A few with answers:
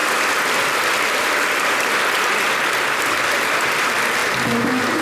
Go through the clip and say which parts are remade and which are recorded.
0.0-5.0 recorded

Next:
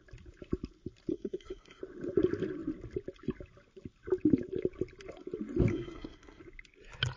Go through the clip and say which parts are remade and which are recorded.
0.0-1.1 recorded; 1.1-1.8 remade; 1.8-5.7 recorded; 5.7-6.4 remade; 6.4-7.2 recorded